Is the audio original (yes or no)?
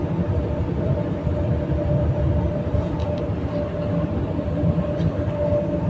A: yes